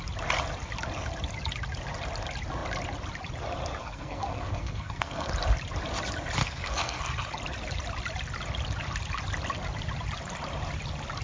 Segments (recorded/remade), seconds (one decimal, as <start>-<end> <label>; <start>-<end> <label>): 0.0-3.8 recorded; 3.8-5.3 remade; 5.3-6.4 recorded; 6.4-7.0 remade; 7.0-11.2 recorded